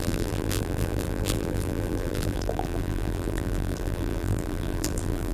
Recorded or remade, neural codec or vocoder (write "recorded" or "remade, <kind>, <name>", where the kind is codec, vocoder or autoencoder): remade, vocoder, BigVGAN v2